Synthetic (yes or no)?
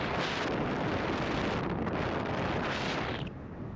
no